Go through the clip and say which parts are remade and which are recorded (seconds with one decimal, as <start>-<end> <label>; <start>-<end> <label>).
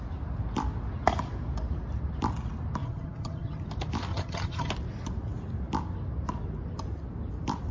0.0-2.8 recorded; 2.8-3.6 remade; 3.6-4.1 recorded; 4.1-4.7 remade; 4.7-7.7 recorded